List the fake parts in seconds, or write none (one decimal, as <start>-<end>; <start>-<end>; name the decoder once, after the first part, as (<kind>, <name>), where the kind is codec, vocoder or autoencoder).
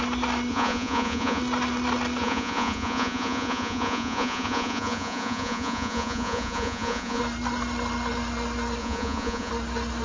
0.5-1.4 (vocoder, Vocos); 2.2-7.2; 8.8-9.5